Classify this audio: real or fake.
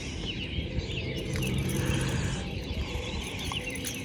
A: fake